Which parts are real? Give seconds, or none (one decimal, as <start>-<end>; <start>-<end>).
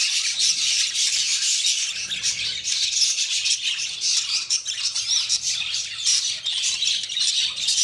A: 1.3-2.3